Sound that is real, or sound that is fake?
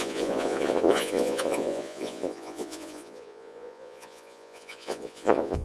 fake